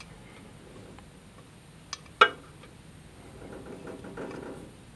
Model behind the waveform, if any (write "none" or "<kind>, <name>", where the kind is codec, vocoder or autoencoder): none